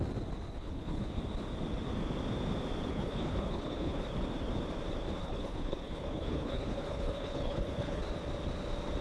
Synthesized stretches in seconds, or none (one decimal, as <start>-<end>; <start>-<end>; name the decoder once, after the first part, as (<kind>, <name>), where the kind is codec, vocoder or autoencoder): 0.5-1.2 (codec, HILCodec); 2.9-4.0; 5.2-8.0